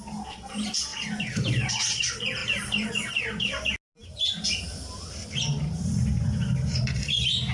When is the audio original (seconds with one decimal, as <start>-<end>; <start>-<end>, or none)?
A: 0.0-2.4; 3.1-5.5; 7.0-7.5